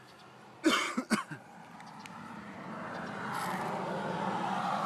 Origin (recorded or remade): recorded